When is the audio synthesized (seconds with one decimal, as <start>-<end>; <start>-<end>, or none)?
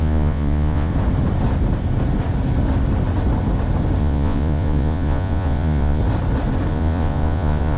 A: 0.0-0.9; 4.0-6.0; 6.7-7.8